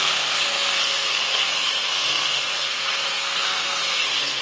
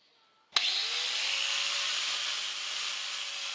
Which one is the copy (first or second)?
first